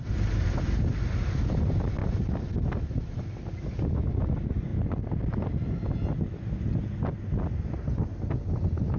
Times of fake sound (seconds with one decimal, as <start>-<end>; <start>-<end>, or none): none